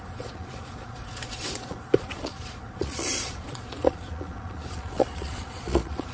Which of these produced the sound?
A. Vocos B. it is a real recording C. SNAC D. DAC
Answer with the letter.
A